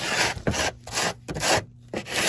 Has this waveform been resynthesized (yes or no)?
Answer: no